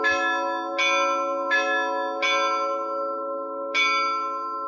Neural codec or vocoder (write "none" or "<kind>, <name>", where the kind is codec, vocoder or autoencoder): none